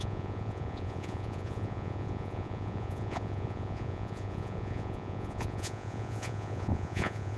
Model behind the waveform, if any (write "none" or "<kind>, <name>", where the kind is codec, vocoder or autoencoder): vocoder, Vocos